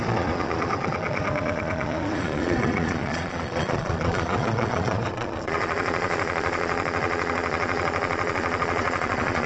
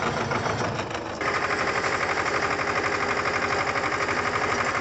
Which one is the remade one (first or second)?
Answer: first